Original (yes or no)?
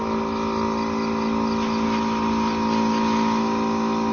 yes